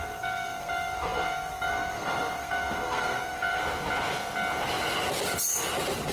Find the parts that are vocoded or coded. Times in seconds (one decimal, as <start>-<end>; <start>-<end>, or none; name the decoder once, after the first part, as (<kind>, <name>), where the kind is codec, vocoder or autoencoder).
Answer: 0.0-3.6 (codec, SNAC)